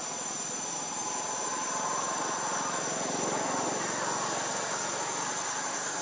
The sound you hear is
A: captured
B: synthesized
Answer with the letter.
A